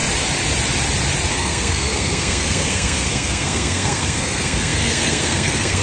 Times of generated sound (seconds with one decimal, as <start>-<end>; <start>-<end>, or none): 1.3-5.8